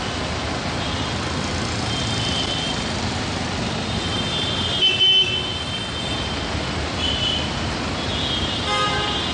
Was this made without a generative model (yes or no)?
yes